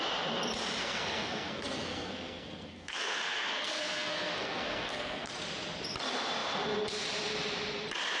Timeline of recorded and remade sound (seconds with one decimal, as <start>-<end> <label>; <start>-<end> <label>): 0.0-0.8 recorded; 0.8-5.3 remade; 5.3-8.2 recorded